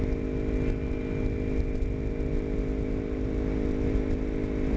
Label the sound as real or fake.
real